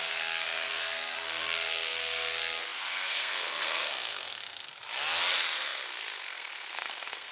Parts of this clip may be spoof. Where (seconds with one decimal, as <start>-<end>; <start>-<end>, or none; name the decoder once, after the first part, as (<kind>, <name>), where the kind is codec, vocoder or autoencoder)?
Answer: 0.0-4.8 (codec, SNAC); 5.3-7.3

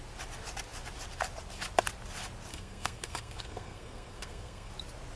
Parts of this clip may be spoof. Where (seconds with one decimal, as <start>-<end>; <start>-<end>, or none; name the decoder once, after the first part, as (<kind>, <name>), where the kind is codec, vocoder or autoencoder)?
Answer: 2.5-4.7 (codec, SNAC)

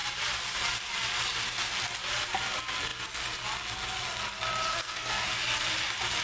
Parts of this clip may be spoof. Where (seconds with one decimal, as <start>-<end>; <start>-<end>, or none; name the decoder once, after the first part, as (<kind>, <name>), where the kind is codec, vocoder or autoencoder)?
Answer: 4.7-5.3 (codec, SNAC)